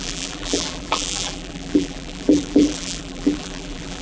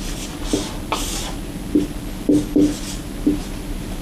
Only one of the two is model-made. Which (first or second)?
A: first